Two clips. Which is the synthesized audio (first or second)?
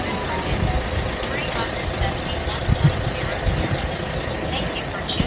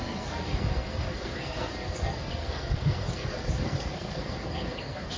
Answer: second